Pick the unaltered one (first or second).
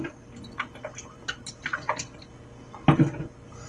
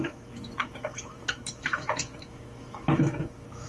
first